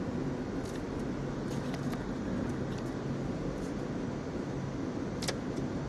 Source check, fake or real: real